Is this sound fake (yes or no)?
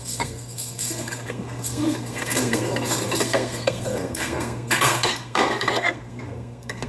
yes